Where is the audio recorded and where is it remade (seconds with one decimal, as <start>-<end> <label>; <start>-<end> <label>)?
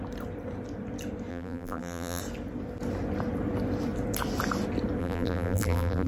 0.0-1.3 recorded; 1.3-2.2 remade; 2.2-5.0 recorded; 5.0-6.1 remade